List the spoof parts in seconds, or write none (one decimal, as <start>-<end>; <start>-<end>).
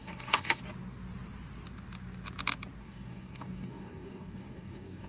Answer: 0.0-0.6; 2.8-5.1